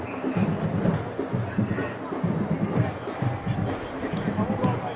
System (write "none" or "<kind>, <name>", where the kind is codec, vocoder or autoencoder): none